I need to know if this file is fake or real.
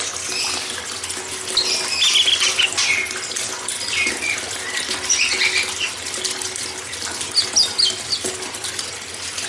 real